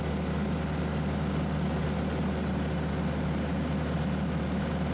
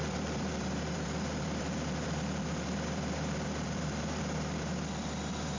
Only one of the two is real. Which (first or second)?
first